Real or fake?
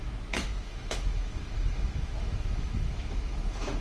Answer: fake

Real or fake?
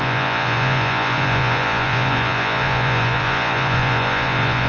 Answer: fake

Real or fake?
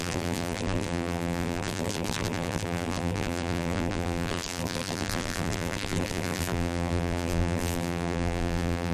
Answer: fake